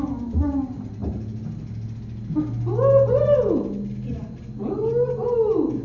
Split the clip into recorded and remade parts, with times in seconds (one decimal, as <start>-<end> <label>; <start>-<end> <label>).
0.0-5.8 recorded